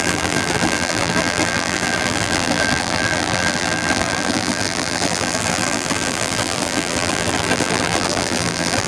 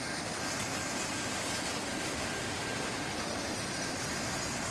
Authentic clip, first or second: second